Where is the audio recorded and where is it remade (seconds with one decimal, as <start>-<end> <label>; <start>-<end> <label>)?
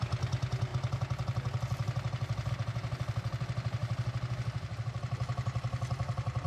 0.0-6.5 recorded